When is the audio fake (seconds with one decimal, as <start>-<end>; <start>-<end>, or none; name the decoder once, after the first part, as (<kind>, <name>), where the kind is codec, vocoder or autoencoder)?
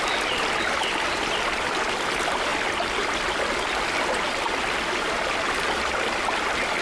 none